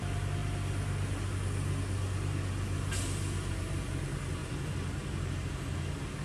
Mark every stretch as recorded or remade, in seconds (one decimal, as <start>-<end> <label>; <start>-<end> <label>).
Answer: 0.0-4.4 recorded; 4.4-5.5 remade; 5.5-6.2 recorded